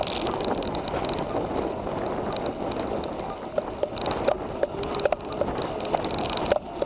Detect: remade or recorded recorded